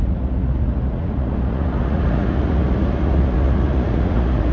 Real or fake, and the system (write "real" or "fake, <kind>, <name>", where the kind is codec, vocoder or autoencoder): fake, vocoder, Vocos